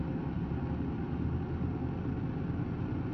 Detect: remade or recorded recorded